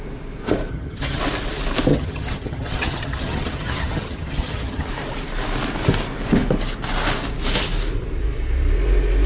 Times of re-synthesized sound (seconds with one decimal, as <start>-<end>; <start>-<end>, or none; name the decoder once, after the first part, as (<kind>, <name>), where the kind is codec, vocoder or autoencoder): 0.7-1.2 (vocoder, HiFi-GAN); 1.9-4.9